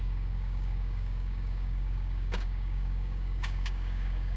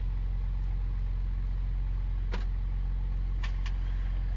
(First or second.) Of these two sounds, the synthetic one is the first